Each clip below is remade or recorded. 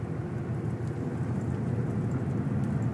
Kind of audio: recorded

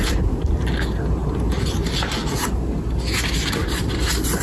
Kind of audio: recorded